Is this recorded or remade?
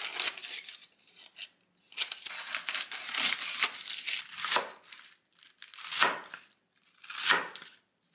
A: recorded